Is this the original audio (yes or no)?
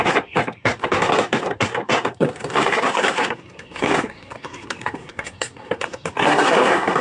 no